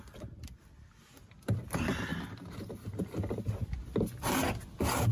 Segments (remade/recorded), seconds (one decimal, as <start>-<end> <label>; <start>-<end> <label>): 0.0-5.1 recorded

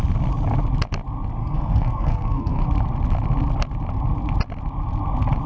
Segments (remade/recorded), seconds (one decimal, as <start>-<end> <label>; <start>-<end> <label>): 0.0-1.4 recorded; 1.4-2.7 remade; 2.7-5.5 recorded

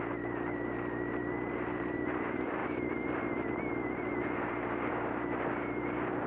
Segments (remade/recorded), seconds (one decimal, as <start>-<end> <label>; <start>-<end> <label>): 0.0-6.3 recorded